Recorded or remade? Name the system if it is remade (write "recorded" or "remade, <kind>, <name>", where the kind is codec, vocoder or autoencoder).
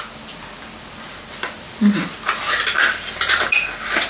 recorded